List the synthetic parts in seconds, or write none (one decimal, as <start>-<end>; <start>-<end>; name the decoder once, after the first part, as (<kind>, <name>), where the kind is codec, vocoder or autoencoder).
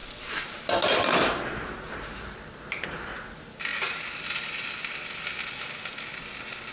0.0-2.2 (vocoder, BigVGAN v2); 3.7-4.7